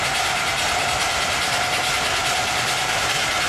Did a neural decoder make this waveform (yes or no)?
no